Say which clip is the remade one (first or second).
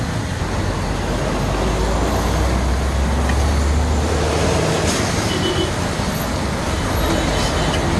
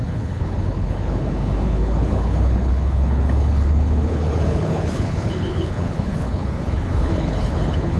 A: second